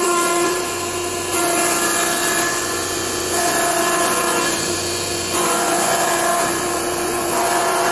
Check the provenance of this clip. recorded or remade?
remade